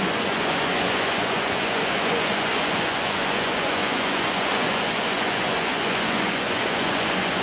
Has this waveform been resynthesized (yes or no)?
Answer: yes